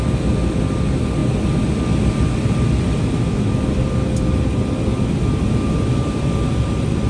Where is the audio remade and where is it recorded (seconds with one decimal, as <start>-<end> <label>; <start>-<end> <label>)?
0.0-7.1 recorded